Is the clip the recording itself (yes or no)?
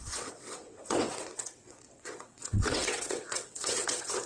no